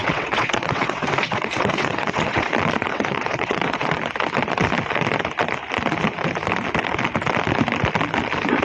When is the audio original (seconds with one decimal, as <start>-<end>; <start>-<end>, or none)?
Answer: 2.5-2.9; 3.9-8.6

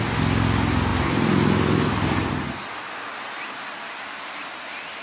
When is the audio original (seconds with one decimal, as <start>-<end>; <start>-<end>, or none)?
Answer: 0.0-5.0